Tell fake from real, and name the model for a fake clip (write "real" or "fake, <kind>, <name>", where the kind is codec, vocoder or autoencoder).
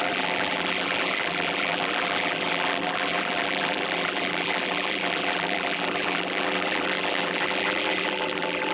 fake, vocoder, BigVGAN v2